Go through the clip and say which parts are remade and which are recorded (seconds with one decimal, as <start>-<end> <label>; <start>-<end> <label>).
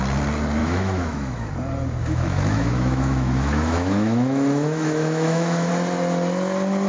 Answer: 0.0-0.6 recorded; 0.6-1.5 remade; 1.5-2.0 recorded; 2.0-5.7 remade; 5.7-6.9 recorded